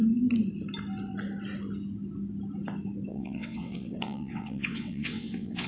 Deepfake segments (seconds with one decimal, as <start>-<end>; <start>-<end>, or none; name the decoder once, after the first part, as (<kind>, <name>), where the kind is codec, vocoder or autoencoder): 3.1-5.7 (vocoder, WaveNeXt)